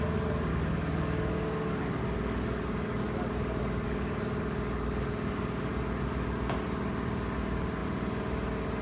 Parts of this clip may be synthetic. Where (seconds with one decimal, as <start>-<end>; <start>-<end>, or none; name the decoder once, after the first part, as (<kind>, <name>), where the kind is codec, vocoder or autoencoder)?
0.5-5.7 (codec, DAC)